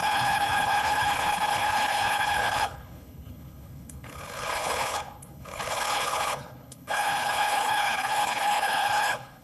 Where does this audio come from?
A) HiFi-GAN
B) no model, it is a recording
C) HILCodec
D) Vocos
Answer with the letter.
C